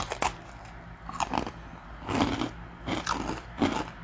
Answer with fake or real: real